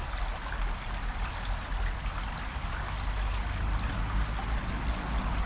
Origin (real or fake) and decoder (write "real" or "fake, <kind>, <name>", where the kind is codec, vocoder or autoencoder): real